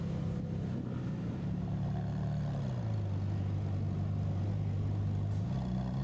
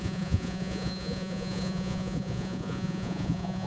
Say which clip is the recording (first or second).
first